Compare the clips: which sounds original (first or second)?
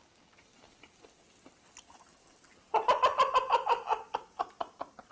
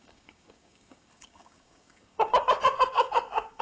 first